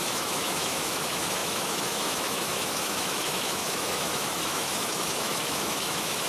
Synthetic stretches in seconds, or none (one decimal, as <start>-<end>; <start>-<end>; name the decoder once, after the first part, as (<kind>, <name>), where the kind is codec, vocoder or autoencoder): 0.0-6.3 (autoencoder, DAC-VAE)